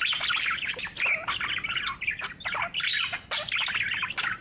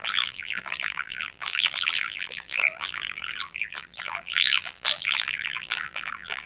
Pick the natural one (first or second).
first